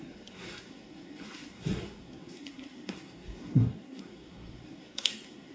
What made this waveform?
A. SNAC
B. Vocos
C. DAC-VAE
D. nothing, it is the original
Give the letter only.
A